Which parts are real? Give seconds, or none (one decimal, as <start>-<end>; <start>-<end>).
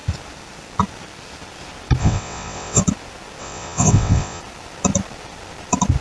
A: 0.0-2.0; 2.8-3.4; 4.4-6.0